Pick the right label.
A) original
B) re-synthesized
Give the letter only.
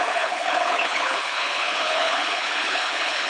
B